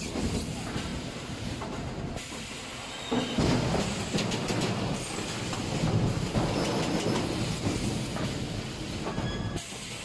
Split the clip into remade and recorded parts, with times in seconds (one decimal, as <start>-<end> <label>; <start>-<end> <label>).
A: 0.0-0.9 recorded; 0.9-2.0 remade; 2.0-10.0 recorded